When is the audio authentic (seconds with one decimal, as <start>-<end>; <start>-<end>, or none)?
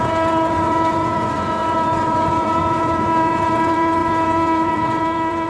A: none